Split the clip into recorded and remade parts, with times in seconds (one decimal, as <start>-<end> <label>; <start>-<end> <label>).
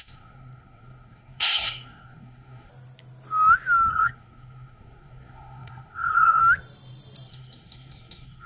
0.0-2.7 remade; 2.7-3.9 recorded; 3.9-6.4 remade; 6.4-7.3 recorded; 7.3-8.5 remade